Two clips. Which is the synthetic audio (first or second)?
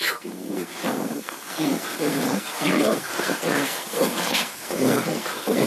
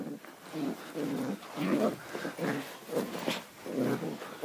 first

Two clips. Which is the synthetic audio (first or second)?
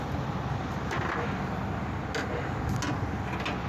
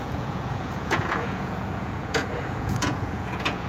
second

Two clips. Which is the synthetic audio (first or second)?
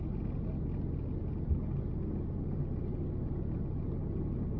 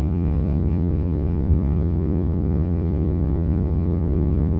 second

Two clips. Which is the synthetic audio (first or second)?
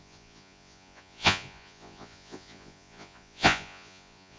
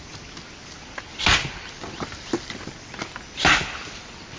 first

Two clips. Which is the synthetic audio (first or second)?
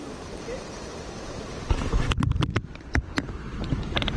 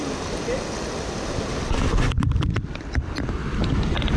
first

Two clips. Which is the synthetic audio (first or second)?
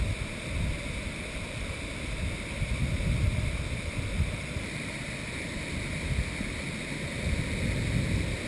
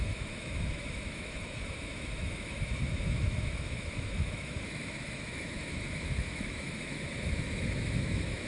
second